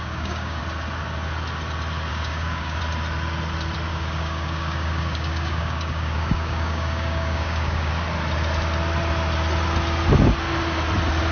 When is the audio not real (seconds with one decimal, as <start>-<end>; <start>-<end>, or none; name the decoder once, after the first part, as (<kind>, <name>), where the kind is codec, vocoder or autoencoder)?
0.0-0.6 (codec, DAC); 2.1-2.8; 3.9-7.9